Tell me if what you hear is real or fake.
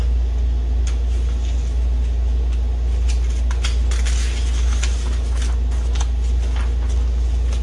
real